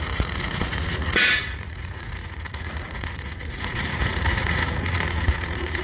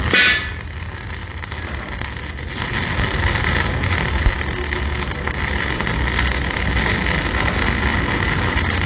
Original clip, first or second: second